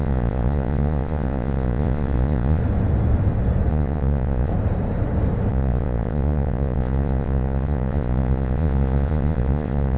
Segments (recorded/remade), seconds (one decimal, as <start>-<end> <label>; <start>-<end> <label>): 0.0-2.6 remade; 2.6-3.7 recorded; 3.7-4.5 remade; 4.5-5.5 recorded; 5.5-10.0 remade